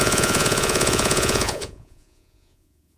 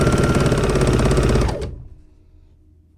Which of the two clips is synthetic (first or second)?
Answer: first